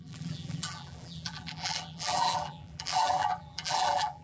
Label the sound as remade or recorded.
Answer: remade